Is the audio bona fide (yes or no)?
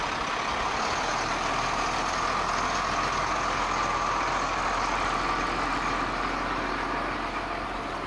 yes